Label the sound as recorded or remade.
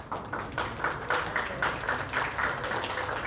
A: recorded